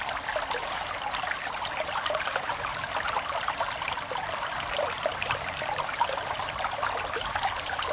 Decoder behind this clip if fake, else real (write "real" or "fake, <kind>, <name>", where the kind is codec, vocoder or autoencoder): real